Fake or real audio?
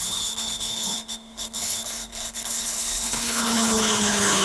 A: fake